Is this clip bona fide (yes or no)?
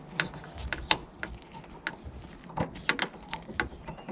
yes